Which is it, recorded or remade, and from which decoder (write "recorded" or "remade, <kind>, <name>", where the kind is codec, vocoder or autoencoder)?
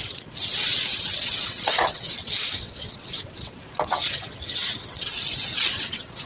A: remade, vocoder, WaveNeXt